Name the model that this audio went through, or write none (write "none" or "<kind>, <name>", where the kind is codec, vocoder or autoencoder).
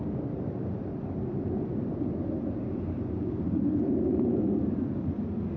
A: none